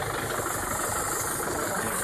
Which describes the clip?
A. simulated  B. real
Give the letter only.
B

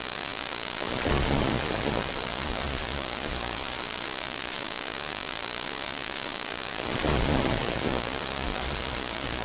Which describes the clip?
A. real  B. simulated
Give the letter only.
B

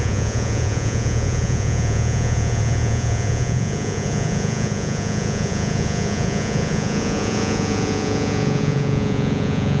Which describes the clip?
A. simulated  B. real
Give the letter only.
A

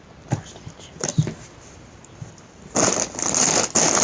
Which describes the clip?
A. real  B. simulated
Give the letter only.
A